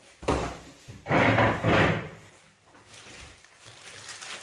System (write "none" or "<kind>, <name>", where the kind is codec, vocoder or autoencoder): vocoder, BigVGAN v2